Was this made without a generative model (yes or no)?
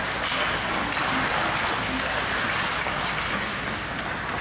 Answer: yes